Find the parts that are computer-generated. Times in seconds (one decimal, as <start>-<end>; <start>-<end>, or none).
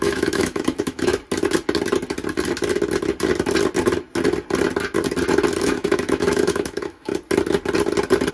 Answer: 0.0-1.1; 5.6-7.1